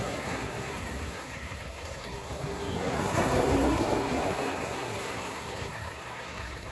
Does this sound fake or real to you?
fake